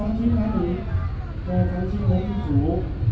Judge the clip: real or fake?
real